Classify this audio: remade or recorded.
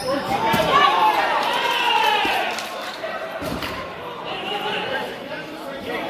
remade